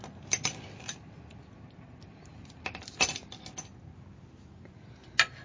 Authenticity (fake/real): real